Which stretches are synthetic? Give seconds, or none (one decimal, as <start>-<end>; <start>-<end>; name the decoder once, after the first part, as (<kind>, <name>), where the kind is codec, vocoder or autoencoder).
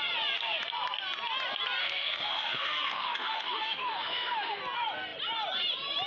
1.8-4.6 (autoencoder, DAC-VAE)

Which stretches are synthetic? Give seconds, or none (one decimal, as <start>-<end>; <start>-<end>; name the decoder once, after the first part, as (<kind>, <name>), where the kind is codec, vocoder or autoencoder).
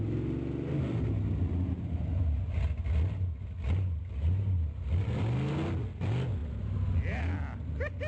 none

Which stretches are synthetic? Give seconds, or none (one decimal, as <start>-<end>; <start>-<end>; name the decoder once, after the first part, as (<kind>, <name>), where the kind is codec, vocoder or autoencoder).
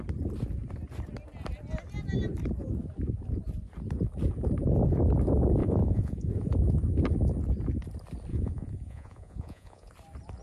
5.6-6.3 (vocoder, Vocos); 8.3-9.9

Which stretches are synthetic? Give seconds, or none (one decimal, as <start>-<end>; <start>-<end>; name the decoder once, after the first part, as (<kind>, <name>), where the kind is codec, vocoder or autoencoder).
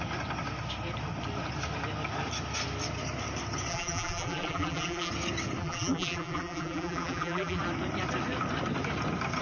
3.7-5.1 (vocoder, BigVGAN v2); 5.6-7.6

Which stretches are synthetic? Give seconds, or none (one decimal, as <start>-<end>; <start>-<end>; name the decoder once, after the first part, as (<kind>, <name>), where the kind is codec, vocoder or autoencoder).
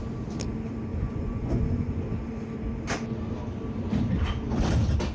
0.9-2.0 (vocoder, Vocos)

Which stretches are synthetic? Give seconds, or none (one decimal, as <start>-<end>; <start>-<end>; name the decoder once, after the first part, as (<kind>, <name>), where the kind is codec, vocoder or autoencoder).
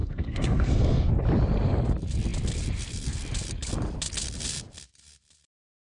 0.0-1.1 (codec, SNAC)